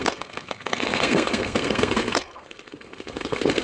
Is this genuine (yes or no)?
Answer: no